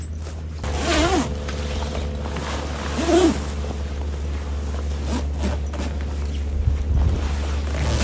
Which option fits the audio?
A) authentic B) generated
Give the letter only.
A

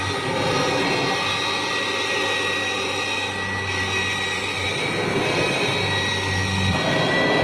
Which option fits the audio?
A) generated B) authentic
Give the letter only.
B